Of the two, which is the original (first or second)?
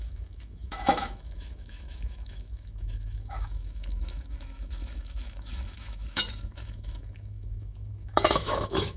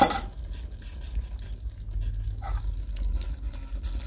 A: second